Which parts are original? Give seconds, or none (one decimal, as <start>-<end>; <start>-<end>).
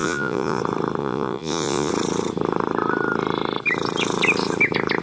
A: 0.6-1.0; 1.9-5.0